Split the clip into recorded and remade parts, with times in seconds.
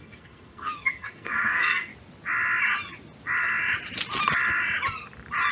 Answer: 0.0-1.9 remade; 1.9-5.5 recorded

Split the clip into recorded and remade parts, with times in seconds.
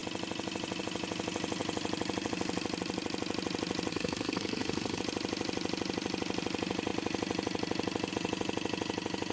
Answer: 0.0-3.9 recorded; 3.9-5.0 remade; 5.0-9.3 recorded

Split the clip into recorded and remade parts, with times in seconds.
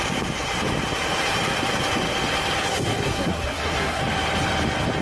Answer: 0.0-2.7 recorded; 2.7-4.0 remade; 4.0-5.0 recorded